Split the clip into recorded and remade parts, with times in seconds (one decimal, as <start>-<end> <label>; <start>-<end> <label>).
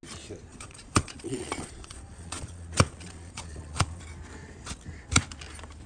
0.0-0.5 recorded; 0.5-4.0 remade; 4.0-5.9 recorded